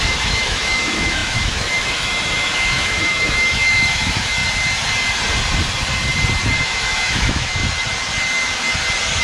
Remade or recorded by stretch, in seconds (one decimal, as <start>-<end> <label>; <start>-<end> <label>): 0.0-4.4 remade; 4.4-6.6 recorded; 6.6-7.6 remade; 7.6-9.2 recorded